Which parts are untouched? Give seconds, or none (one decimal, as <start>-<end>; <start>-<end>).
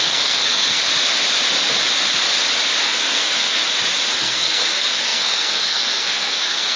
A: 0.8-2.8; 3.6-4.2